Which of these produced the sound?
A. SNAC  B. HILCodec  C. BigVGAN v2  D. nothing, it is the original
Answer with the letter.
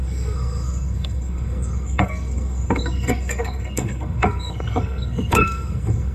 A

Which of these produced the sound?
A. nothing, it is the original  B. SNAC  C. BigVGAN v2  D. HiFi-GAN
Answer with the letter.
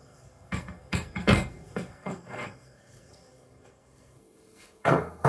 B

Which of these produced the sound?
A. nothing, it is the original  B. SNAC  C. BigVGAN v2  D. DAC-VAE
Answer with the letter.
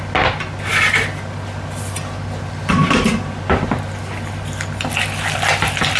A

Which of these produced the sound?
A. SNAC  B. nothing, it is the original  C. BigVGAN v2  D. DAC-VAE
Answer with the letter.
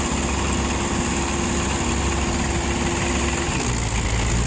B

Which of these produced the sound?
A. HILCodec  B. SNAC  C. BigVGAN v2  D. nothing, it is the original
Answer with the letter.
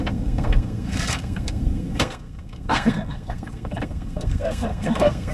B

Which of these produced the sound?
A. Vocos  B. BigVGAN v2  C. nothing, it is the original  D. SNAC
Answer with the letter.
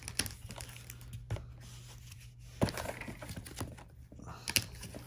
C